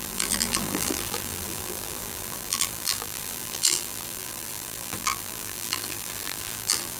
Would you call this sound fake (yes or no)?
yes